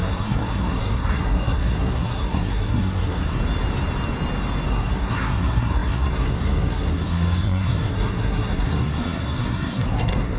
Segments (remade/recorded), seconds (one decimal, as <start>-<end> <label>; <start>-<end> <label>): 0.0-3.4 remade; 3.4-4.7 recorded; 4.7-10.4 remade